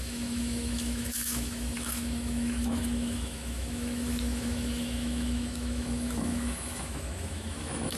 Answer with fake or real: fake